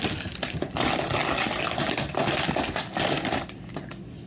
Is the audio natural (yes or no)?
yes